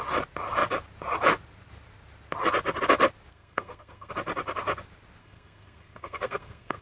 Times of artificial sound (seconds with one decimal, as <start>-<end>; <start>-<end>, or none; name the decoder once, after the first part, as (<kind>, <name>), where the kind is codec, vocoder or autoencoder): 3.3-4.1 (codec, SNAC); 5.2-6.8